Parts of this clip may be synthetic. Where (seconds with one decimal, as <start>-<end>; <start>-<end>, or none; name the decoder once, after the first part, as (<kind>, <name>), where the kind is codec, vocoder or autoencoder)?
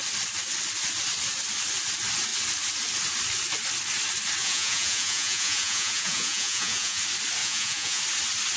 4.4-7.0 (vocoder, Vocos); 7.4-8.0